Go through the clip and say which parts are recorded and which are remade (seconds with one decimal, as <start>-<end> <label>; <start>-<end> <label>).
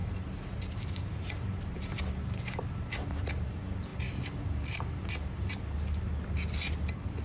0.0-2.0 remade; 2.0-7.2 recorded